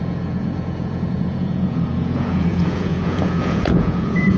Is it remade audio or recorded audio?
remade